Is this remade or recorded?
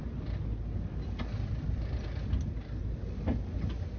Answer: recorded